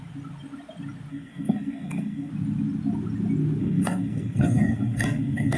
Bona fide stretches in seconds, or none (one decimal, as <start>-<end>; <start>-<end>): 0.0-1.1; 2.3-3.6